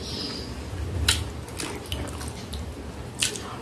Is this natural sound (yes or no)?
yes